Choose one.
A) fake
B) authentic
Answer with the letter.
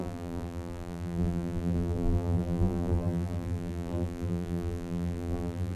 A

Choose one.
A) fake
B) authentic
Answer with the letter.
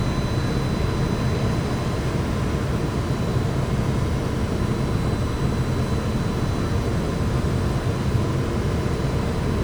B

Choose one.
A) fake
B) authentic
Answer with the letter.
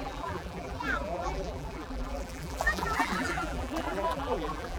A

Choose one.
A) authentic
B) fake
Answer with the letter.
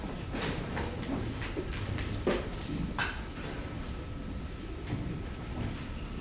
B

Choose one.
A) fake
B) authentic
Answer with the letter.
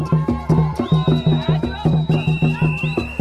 B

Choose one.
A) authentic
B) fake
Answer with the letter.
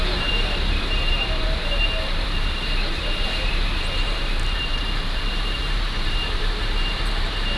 B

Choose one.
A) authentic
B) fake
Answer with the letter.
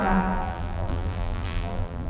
B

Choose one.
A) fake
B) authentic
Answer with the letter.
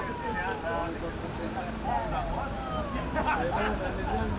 B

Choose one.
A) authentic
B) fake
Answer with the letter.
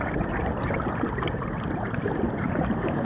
B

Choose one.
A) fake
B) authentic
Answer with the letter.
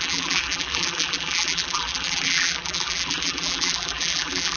A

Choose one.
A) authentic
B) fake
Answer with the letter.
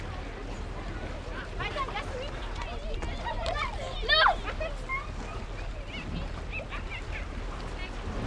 A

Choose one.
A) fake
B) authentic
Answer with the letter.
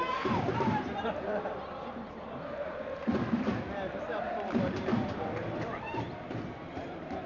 A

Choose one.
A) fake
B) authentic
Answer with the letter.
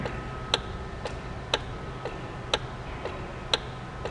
B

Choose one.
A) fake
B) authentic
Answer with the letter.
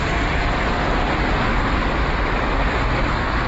B